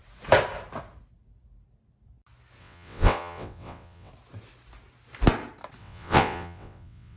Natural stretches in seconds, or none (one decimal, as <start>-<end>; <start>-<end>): 0.0-2.6; 4.1-5.8